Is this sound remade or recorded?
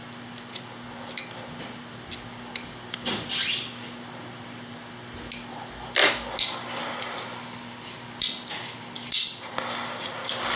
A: recorded